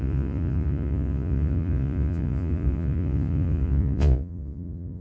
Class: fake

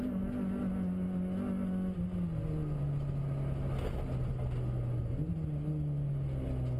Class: real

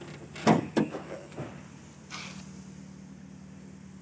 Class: real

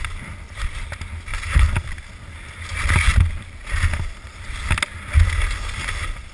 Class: real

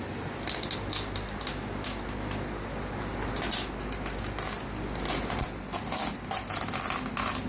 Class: real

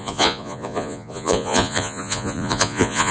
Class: fake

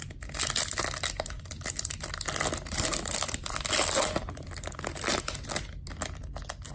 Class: real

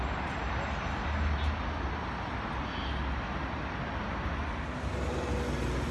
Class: real